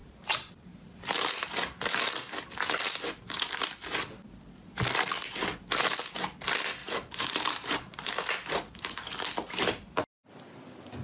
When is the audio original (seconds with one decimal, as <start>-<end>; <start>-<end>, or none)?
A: 1.5-6.8; 8.1-11.0